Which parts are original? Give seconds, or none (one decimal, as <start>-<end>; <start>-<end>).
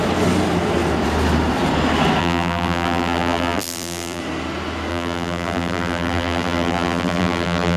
0.0-2.2; 4.2-4.9